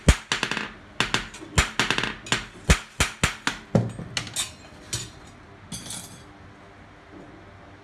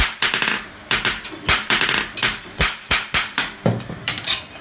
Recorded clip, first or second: first